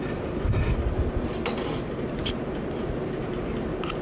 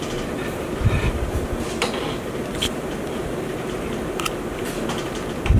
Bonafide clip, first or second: first